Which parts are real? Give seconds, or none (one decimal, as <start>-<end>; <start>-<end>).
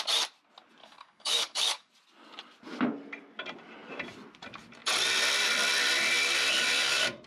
0.0-0.8; 1.9-7.3